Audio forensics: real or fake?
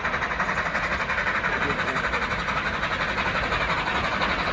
real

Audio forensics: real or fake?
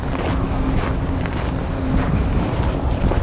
real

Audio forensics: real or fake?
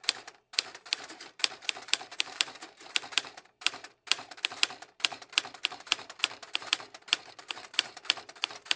fake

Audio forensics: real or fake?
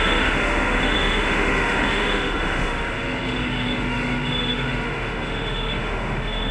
fake